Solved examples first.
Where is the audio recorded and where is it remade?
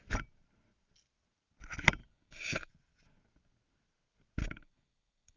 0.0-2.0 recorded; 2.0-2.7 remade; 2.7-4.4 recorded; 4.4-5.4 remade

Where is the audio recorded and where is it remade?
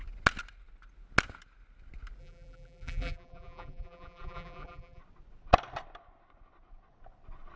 0.0-2.2 recorded; 2.2-5.0 remade; 5.0-7.6 recorded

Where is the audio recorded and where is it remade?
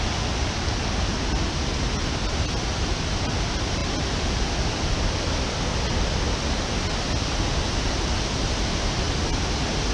0.0-9.9 recorded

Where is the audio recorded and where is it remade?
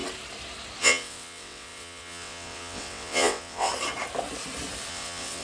0.0-0.8 recorded; 0.8-3.7 remade; 3.7-4.9 recorded; 4.9-5.4 remade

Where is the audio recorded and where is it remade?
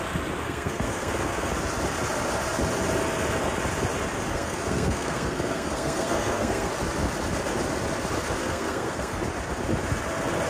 0.0-0.4 recorded; 0.4-1.5 remade; 1.5-4.3 recorded; 4.3-6.7 remade; 6.7-8.4 recorded; 8.4-9.2 remade; 9.2-10.5 recorded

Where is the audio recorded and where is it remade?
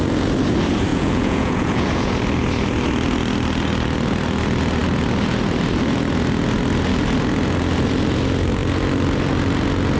0.0-0.9 recorded; 0.9-2.2 remade; 2.2-10.0 recorded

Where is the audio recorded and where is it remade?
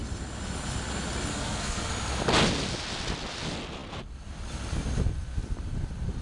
0.0-1.3 recorded; 1.3-1.9 remade; 1.9-6.2 recorded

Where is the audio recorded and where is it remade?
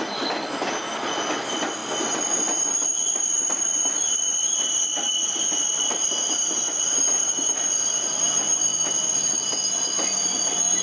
0.0-10.8 recorded